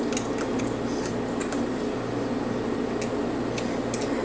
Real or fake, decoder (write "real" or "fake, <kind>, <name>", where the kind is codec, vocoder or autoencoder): real